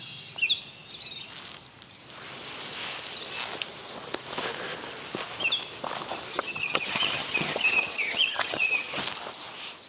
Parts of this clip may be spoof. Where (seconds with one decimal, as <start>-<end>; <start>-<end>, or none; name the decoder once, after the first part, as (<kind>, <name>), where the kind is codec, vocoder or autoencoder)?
6.3-9.0 (vocoder, HiFi-GAN)